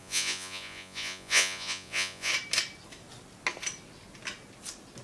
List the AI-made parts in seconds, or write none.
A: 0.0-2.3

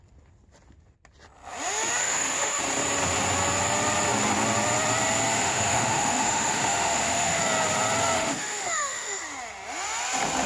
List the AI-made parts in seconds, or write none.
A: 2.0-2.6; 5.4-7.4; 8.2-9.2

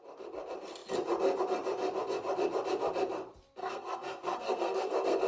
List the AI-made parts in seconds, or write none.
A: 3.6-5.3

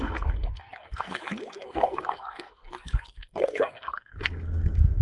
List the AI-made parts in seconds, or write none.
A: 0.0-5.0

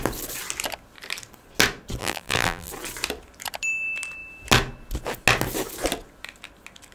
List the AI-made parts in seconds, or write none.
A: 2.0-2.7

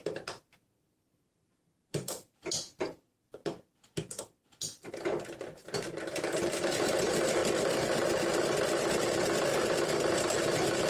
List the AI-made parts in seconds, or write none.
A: 0.0-3.4; 5.4-7.4; 9.0-9.5; 10.1-10.9